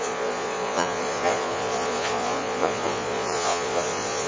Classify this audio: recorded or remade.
remade